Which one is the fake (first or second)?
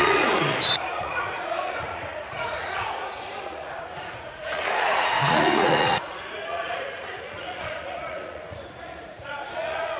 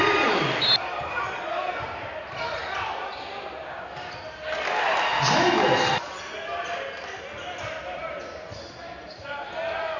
first